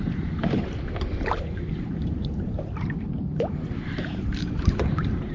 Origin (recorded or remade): remade